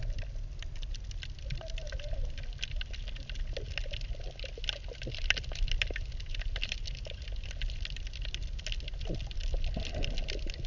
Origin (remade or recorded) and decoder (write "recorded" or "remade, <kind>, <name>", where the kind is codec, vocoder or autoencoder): recorded